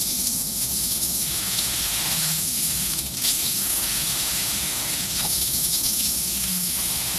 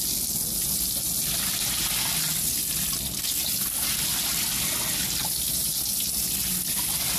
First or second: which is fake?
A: first